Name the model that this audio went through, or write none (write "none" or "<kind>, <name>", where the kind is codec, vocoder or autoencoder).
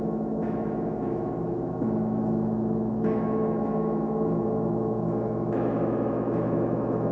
autoencoder, DAC-VAE